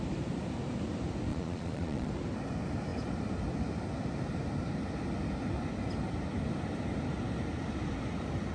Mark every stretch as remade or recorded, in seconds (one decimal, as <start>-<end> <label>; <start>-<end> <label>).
0.0-1.3 recorded; 1.3-2.1 remade; 2.1-8.5 recorded